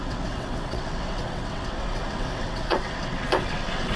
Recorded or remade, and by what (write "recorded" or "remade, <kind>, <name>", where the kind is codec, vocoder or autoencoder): remade, vocoder, WaveNeXt